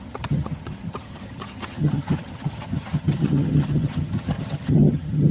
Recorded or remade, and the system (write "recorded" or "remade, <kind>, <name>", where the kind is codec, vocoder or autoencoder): remade, vocoder, HiFi-GAN